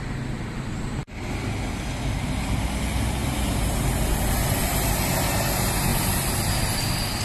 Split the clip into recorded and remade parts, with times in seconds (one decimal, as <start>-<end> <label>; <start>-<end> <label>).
0.0-7.2 recorded